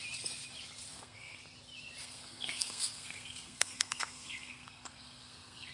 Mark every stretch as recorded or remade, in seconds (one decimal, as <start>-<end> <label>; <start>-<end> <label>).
0.0-0.9 recorded; 0.9-1.4 remade; 1.4-2.0 recorded; 2.0-5.7 remade